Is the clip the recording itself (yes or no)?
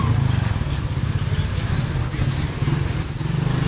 yes